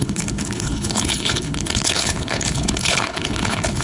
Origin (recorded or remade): remade